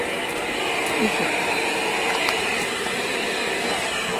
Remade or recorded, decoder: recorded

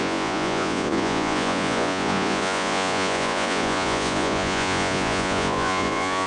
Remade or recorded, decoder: remade, vocoder, Vocos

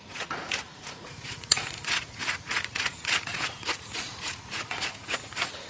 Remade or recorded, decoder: remade, vocoder, Vocos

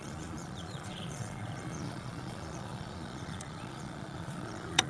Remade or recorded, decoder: remade, vocoder, Vocos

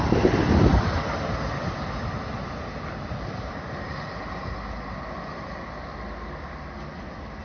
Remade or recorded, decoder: recorded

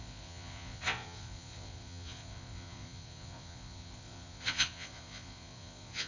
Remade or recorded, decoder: remade, vocoder, Vocos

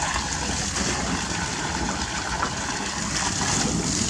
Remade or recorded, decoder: recorded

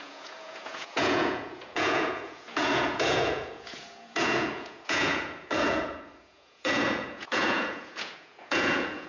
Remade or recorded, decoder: remade, vocoder, Vocos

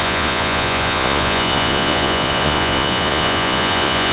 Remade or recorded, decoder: remade, vocoder, Vocos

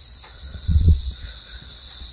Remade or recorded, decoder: remade, vocoder, Vocos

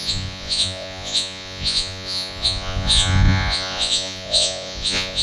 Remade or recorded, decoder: remade, vocoder, Vocos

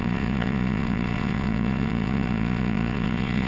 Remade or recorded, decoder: remade, vocoder, Vocos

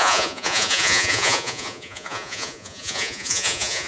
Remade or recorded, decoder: remade, vocoder, Vocos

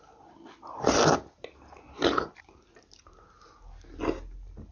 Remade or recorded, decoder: recorded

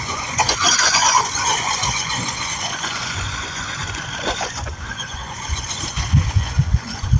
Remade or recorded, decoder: remade, vocoder, Vocos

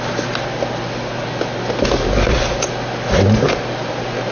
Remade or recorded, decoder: recorded